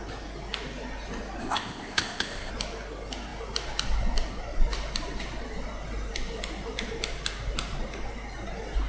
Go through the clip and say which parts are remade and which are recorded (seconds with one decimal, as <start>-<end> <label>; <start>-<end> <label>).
0.0-1.4 recorded; 1.4-2.5 remade; 2.5-8.9 recorded